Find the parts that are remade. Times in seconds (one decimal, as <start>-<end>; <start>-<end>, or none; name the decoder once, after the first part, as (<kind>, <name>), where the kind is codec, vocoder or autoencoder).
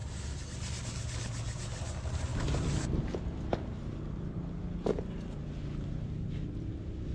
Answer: none